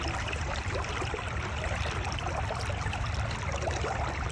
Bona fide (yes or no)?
no